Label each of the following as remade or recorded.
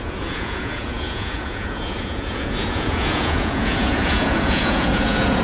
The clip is remade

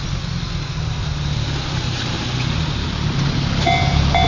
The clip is recorded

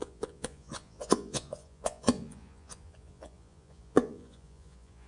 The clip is remade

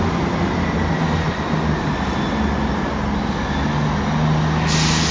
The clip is recorded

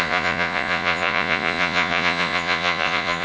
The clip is remade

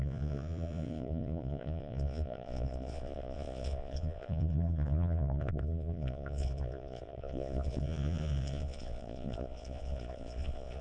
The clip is remade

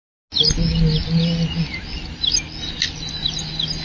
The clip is recorded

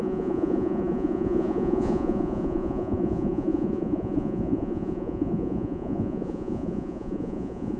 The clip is remade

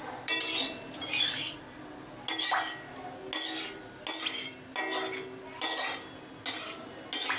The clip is recorded